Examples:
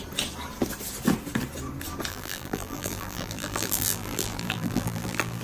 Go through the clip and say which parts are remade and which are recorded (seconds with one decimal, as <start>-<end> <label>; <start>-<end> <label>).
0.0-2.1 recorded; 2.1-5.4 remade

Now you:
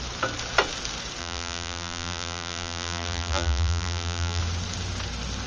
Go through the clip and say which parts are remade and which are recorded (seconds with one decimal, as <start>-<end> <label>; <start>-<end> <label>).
0.0-1.2 recorded; 1.2-4.4 remade; 4.4-5.5 recorded

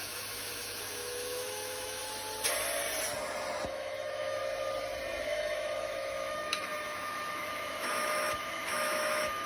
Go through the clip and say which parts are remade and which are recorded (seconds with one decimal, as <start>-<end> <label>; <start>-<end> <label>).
0.0-2.0 remade; 2.0-3.7 recorded; 3.7-4.4 remade; 4.4-5.3 recorded; 5.3-9.5 remade

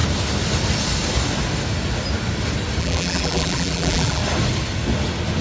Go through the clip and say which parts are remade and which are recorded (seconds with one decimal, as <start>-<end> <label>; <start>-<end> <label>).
0.0-2.8 recorded; 2.8-4.2 remade; 4.2-5.4 recorded

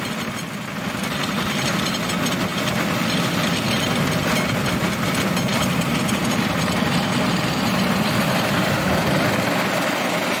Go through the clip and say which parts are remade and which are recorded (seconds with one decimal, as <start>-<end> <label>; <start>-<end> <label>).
0.0-5.5 recorded; 5.5-9.0 remade; 9.0-10.4 recorded

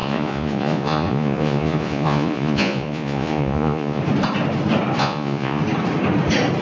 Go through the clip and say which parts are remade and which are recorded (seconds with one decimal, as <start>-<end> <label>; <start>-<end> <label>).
0.0-4.0 remade; 4.0-5.0 recorded; 5.0-5.6 remade; 5.6-6.6 recorded

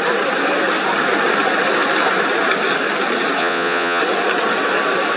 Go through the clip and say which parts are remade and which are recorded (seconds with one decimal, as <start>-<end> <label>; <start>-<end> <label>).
0.0-3.4 recorded; 3.4-4.0 remade; 4.0-5.2 recorded